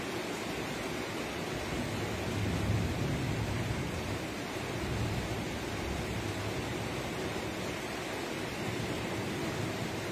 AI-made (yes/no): no